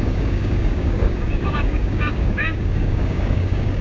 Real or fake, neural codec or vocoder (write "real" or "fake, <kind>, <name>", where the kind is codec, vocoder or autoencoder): fake, codec, DAC